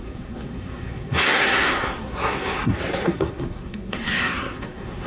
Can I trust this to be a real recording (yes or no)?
no